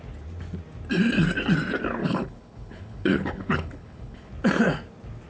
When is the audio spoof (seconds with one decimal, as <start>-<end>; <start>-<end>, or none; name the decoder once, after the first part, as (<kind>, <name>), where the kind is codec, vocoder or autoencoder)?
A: 2.0-4.3 (codec, HILCodec)